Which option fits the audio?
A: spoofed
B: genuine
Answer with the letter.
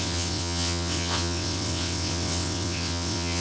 A